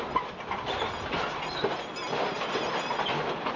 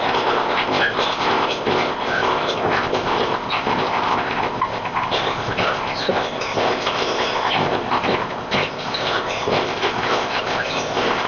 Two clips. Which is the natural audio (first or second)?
first